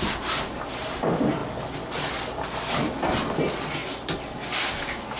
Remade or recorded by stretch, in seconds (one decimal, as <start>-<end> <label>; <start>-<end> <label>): 0.0-5.2 recorded